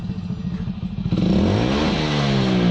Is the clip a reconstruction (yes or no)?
no